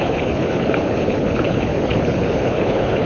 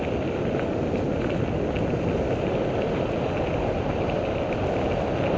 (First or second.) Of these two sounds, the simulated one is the first